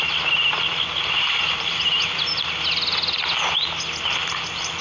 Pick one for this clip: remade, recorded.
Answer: recorded